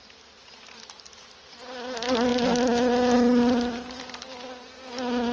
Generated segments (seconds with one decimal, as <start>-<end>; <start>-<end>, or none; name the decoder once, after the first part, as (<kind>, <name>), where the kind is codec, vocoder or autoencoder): none